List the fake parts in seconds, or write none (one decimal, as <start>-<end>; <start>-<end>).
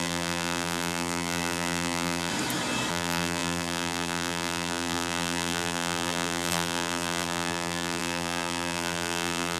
0.0-2.3; 2.9-9.6